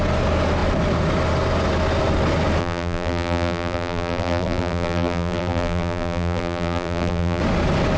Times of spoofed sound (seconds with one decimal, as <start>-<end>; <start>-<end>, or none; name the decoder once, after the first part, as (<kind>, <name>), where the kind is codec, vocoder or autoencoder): 2.6-7.4 (vocoder, BigVGAN v2)